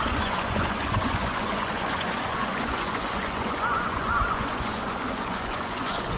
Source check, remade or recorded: remade